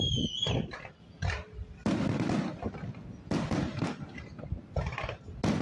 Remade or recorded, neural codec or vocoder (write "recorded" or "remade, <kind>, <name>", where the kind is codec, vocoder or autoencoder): recorded